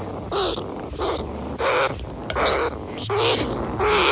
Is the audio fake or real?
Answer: real